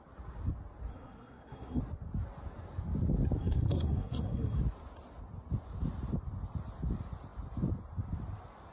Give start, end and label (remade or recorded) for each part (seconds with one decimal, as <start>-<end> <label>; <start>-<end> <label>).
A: 0.0-0.9 recorded; 0.9-1.8 remade; 1.8-3.4 recorded; 3.4-4.6 remade; 4.6-8.7 recorded

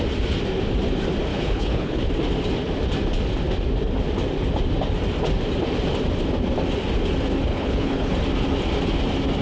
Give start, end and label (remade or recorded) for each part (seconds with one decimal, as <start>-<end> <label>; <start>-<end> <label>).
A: 0.0-1.3 recorded; 1.3-2.1 remade; 2.1-7.5 recorded; 7.5-8.1 remade; 8.1-9.4 recorded

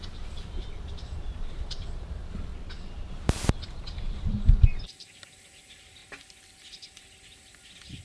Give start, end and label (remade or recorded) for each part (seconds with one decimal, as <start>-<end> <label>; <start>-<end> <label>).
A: 0.0-2.5 remade; 2.5-3.1 recorded; 3.1-6.0 remade; 6.0-8.0 recorded

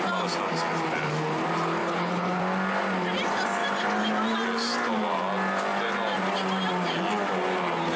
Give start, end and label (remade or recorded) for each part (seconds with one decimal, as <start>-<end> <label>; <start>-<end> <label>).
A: 0.0-1.8 recorded; 1.8-2.4 remade; 2.4-8.0 recorded

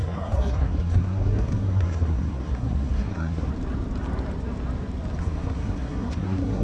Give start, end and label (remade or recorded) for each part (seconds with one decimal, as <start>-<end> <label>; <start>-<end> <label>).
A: 0.0-3.5 remade; 3.5-5.2 recorded; 5.2-6.6 remade

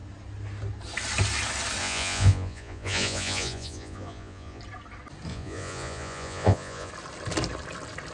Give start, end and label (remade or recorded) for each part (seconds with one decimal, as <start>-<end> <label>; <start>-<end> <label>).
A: 0.0-1.8 recorded; 1.8-4.6 remade; 4.6-5.3 recorded; 5.3-6.9 remade; 6.9-8.1 recorded

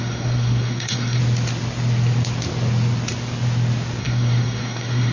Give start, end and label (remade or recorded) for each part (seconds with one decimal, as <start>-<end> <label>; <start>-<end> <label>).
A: 0.0-1.2 remade; 1.2-4.0 recorded; 4.0-5.1 remade

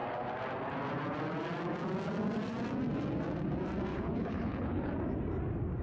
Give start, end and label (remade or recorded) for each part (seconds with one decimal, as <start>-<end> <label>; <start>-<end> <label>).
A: 0.0-3.9 recorded; 3.9-4.9 remade; 4.9-5.8 recorded